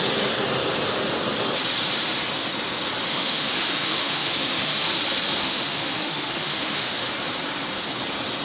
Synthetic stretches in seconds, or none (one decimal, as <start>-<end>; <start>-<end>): 3.1-4.9; 5.4-7.1